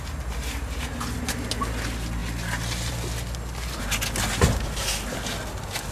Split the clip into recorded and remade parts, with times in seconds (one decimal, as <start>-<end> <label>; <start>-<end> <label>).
0.0-5.9 recorded